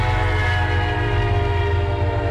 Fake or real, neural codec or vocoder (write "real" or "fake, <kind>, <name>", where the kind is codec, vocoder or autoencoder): real